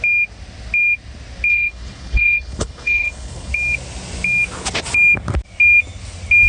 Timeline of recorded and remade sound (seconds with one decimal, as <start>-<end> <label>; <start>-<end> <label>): 0.0-1.5 recorded; 1.5-3.5 remade; 3.5-6.5 recorded

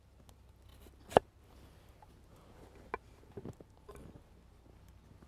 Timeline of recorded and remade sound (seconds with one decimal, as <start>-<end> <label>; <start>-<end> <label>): 0.0-5.3 recorded

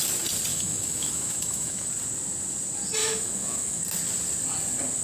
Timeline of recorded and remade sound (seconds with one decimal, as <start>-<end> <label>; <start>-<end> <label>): 0.0-0.5 recorded; 0.5-1.9 remade; 1.9-3.0 recorded; 3.0-3.8 remade; 3.8-5.0 recorded

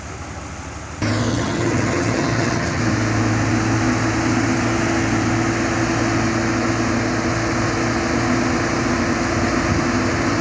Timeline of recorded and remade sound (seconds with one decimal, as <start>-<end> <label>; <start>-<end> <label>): 0.0-1.3 recorded; 1.3-2.8 remade; 2.8-10.4 recorded